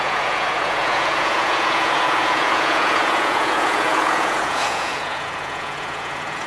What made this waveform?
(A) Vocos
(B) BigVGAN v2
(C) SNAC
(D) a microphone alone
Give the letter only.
A